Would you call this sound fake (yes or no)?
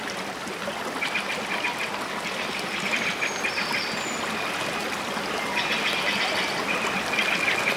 no